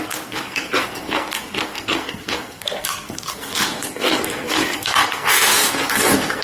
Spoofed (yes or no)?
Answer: yes